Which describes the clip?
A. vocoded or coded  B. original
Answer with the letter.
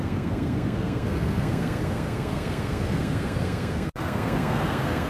A